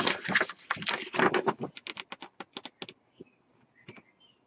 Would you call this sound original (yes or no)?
yes